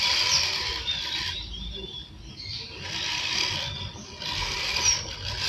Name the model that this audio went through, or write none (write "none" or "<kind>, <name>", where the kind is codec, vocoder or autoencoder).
none